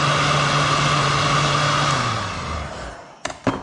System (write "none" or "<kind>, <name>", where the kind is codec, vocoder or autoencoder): none